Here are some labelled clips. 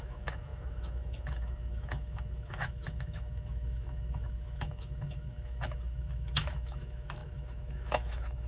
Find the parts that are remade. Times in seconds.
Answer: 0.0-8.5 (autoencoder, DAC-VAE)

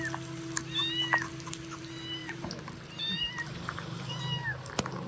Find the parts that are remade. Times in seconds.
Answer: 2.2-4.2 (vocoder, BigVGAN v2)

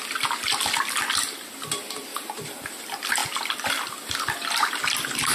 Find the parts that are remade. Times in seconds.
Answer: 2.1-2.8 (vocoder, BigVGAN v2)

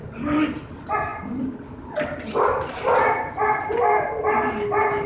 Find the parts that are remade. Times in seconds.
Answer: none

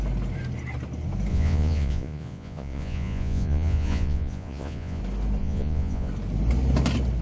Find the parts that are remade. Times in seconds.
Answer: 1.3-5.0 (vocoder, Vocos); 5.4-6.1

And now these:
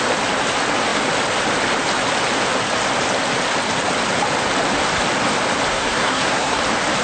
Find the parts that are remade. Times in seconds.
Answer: 5.7-6.6 (codec, SNAC)

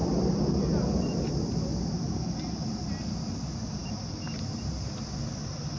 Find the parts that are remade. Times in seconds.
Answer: none